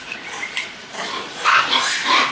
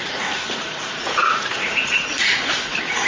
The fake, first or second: second